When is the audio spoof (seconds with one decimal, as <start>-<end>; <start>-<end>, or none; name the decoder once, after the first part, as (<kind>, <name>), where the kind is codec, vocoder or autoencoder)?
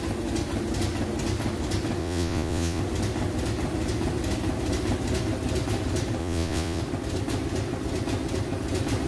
2.0-2.8 (vocoder, Vocos); 6.2-6.8